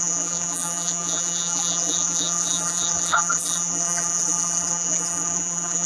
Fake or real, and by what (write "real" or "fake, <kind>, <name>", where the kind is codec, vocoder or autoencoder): fake, vocoder, BigVGAN v2